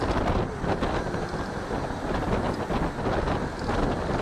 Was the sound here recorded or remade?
recorded